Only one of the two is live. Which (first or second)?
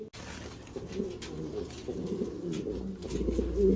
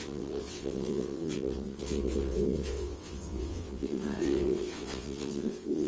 first